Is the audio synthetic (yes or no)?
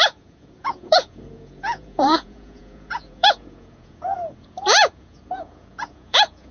yes